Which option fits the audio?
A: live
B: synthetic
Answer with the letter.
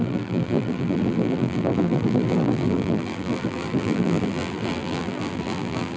B